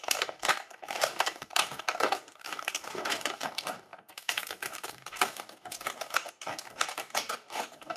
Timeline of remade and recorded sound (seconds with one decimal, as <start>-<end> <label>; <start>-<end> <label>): 0.0-8.0 remade